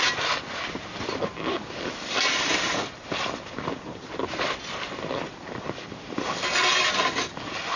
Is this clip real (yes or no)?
yes